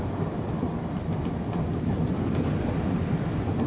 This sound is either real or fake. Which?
fake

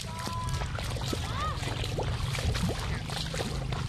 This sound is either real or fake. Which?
real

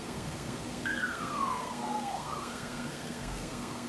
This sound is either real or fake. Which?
fake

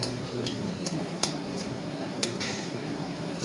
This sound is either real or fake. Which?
fake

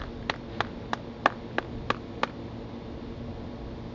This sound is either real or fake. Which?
real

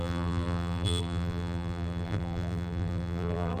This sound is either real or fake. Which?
fake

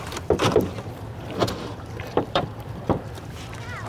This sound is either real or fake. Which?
fake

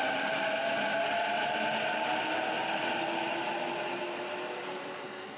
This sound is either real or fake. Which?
real